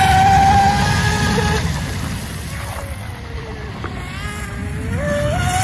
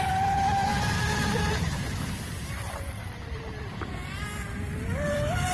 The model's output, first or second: second